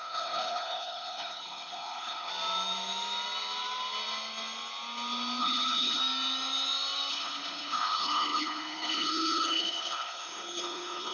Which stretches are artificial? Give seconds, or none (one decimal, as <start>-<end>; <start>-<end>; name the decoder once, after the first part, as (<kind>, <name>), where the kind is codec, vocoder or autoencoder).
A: 0.0-2.3 (codec, HILCodec); 5.4-6.0; 7.1-11.1